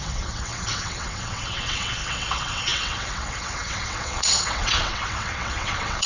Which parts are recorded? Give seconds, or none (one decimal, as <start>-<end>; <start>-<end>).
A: none